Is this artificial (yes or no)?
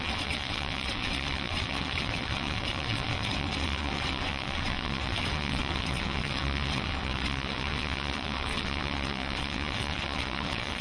yes